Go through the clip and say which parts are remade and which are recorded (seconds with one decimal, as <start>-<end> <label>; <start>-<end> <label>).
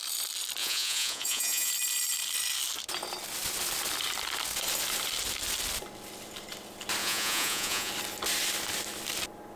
0.0-0.6 recorded; 0.6-1.7 remade; 1.7-7.0 recorded; 7.0-7.9 remade; 7.9-9.6 recorded